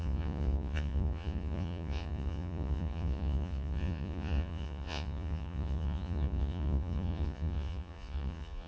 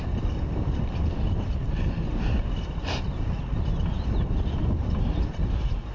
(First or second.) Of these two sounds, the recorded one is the second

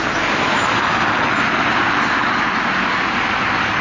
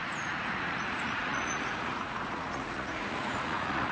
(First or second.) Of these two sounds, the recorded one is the first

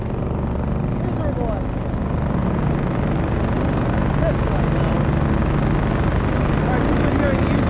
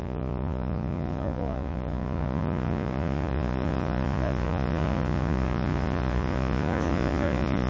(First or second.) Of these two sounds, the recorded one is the first